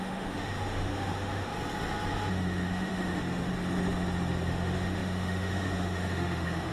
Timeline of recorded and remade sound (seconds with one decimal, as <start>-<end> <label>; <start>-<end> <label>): 0.0-1.5 remade; 1.5-2.3 recorded; 2.3-3.5 remade; 3.5-4.5 recorded; 4.5-6.7 remade